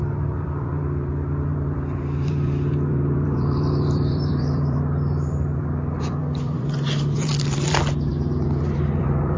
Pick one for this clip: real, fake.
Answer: fake